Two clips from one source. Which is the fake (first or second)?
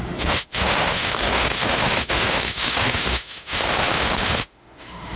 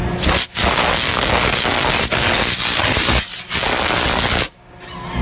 first